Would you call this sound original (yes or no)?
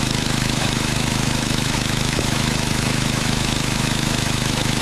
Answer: no